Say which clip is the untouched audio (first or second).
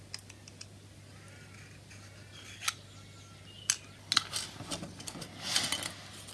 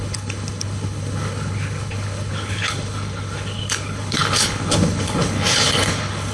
first